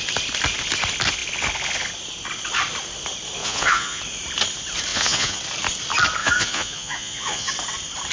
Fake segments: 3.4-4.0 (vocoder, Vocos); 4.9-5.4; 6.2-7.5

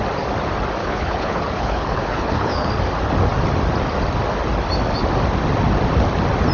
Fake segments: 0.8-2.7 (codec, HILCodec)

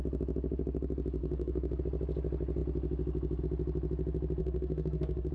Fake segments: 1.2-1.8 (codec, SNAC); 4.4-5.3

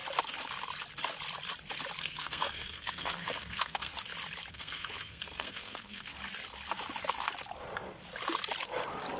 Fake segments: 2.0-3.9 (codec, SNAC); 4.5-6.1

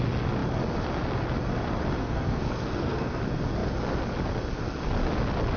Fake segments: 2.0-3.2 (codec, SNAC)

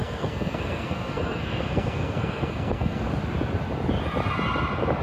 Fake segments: 0.0-3.0 (codec, SNAC)

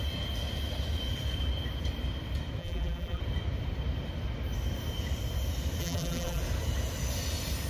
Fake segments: 2.6-3.2 (vocoder, BigVGAN v2); 5.8-6.4

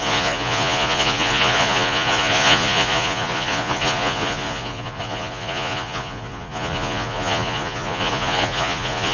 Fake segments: 0.0-9.1 (vocoder, Vocos)